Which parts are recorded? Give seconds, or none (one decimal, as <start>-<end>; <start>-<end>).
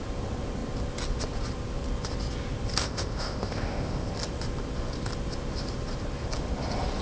0.0-2.8; 4.1-7.0